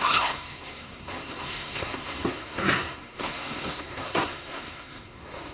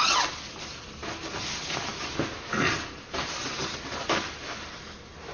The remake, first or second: first